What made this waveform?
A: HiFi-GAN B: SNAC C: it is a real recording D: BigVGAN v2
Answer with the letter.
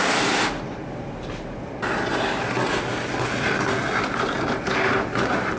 C